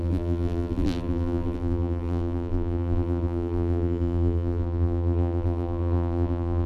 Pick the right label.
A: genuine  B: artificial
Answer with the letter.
B